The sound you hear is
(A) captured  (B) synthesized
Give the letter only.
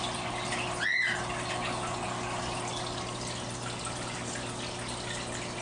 A